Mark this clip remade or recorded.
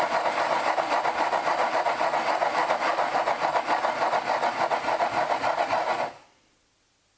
recorded